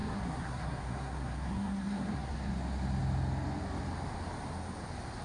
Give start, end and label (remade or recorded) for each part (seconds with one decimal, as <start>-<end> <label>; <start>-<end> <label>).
0.0-2.5 remade; 2.5-5.2 recorded